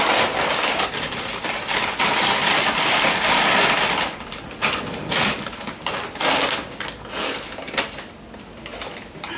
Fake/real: real